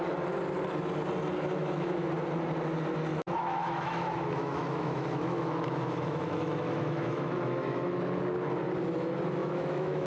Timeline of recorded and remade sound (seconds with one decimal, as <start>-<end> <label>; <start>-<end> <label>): 0.0-1.6 recorded; 1.6-2.1 remade; 2.1-3.1 recorded; 3.1-8.0 remade; 8.0-9.4 recorded; 9.4-10.1 remade